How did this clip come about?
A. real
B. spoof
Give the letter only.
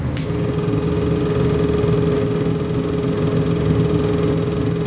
A